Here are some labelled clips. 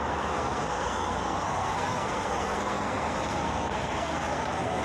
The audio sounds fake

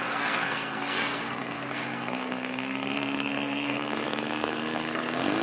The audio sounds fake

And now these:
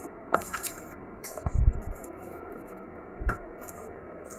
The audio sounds fake